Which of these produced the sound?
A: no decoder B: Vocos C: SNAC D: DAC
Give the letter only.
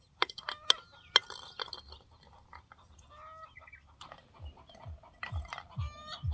A